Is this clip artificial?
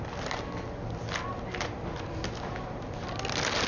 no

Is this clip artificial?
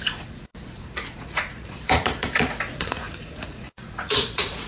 yes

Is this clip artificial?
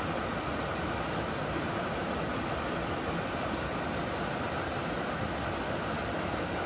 no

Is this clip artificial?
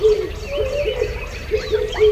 no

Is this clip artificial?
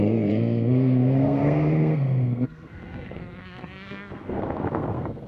yes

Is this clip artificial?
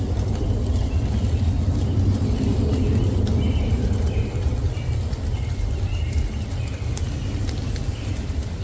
no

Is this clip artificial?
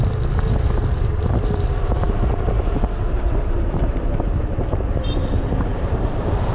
yes